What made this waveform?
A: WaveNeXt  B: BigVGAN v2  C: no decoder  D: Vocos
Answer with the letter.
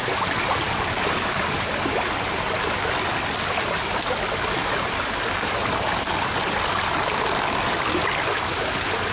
C